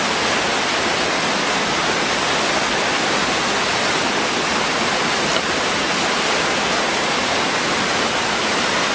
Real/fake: real